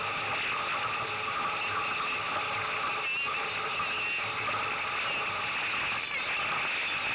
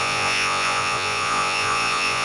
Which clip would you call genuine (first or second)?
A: first